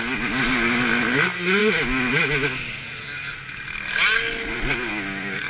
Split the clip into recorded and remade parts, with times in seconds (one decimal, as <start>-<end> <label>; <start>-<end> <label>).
0.0-5.5 recorded

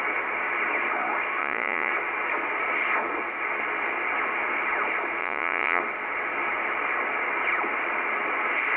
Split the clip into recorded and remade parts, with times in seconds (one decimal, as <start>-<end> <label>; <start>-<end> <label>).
0.0-1.4 recorded; 1.4-1.9 remade; 1.9-5.2 recorded; 5.2-5.8 remade; 5.8-8.8 recorded

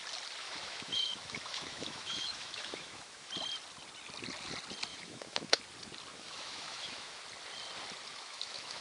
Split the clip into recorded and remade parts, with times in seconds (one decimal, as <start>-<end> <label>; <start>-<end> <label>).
0.0-0.4 recorded; 0.4-3.3 remade; 3.3-4.9 recorded; 4.9-5.6 remade; 5.6-6.1 recorded; 6.1-7.2 remade; 7.2-8.1 recorded; 8.1-8.8 remade

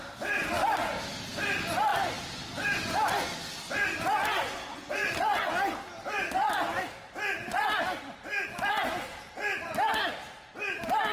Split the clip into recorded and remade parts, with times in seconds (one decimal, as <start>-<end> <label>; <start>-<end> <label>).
0.0-11.1 recorded

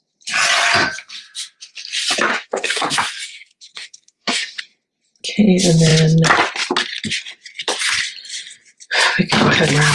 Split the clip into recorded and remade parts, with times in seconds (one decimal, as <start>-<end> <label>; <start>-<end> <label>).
0.0-2.3 recorded; 2.3-4.6 remade; 4.6-9.9 recorded

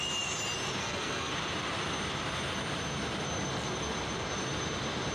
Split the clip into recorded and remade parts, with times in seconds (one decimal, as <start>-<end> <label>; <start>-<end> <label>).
0.0-0.8 recorded; 0.8-1.3 remade; 1.3-5.1 recorded